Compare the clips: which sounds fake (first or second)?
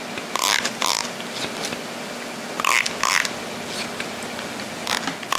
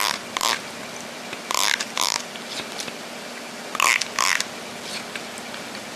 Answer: second